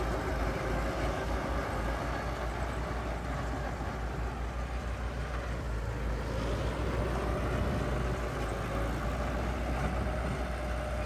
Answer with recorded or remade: recorded